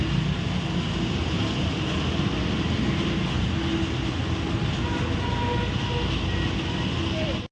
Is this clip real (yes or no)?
yes